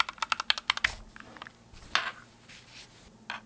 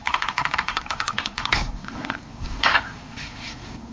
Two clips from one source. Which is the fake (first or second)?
second